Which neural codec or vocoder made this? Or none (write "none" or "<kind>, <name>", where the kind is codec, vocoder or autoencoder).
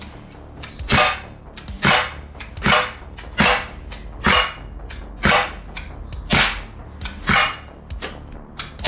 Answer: none